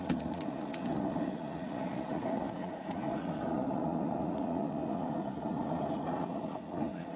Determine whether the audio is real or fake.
fake